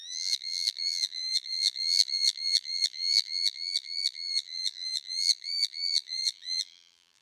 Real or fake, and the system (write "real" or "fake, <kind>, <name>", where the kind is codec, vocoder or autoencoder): fake, vocoder, BigVGAN v2